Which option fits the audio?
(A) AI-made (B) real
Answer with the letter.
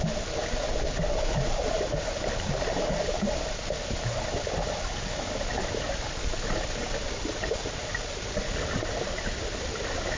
B